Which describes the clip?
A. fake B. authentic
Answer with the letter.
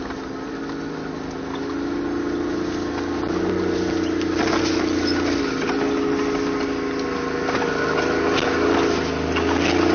B